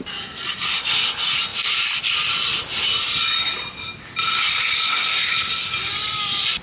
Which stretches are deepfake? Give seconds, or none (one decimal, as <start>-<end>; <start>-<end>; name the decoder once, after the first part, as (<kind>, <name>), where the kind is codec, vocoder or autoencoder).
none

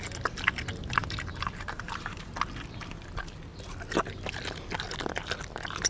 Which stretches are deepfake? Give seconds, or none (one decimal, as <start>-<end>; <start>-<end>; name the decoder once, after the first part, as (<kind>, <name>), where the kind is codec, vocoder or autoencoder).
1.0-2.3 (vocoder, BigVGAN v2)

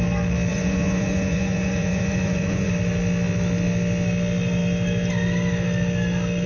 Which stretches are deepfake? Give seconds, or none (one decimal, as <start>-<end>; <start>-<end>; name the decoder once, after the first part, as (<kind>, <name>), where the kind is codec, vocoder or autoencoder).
0.5-2.7 (vocoder, Vocos)

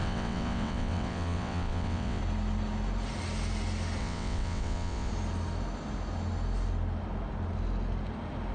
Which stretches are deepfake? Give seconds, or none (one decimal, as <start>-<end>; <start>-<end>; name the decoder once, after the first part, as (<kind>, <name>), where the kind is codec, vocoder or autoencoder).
0.0-2.2 (vocoder, WaveNeXt); 4.0-5.1

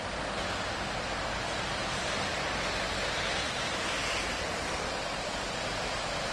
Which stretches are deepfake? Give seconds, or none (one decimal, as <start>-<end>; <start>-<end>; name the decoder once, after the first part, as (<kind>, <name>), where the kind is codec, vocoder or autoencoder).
2.3-6.3 (vocoder, BigVGAN v2)